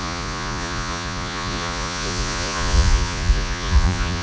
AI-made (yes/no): yes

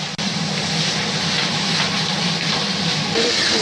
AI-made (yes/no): no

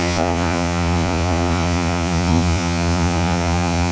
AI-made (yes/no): yes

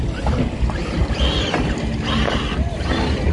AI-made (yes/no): no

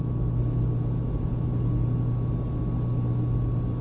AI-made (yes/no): no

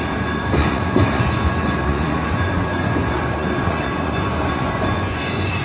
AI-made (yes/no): yes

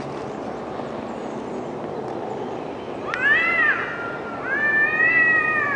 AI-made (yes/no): no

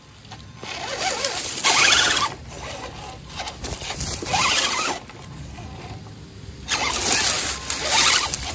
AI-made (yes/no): no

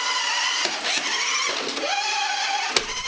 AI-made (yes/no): no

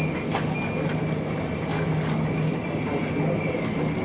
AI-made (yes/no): no